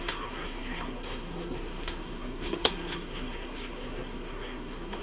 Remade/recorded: remade